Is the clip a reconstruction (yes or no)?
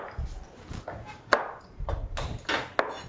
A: no